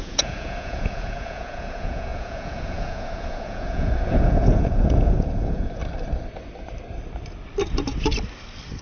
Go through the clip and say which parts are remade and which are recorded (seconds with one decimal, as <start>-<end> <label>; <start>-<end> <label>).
0.0-5.8 remade; 5.8-8.8 recorded